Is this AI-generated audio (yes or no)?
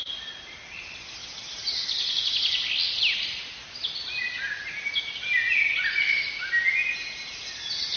no